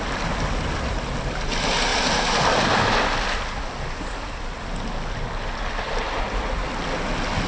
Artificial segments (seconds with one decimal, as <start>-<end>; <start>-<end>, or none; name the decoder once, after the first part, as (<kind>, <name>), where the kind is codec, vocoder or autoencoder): none

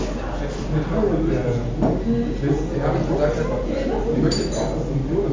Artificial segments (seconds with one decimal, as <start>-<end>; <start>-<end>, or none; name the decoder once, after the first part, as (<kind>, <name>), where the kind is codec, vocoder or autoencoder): none

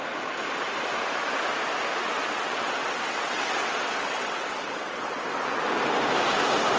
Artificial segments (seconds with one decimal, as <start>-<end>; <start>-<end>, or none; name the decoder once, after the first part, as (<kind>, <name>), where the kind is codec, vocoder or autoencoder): 2.0-5.6 (vocoder, WaveNeXt)

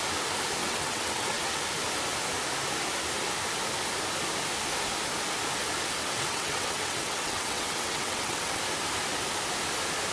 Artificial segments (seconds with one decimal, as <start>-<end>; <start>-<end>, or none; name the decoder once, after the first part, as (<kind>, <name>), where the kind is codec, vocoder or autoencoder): 0.6-1.6 (vocoder, WaveNeXt); 6.0-8.6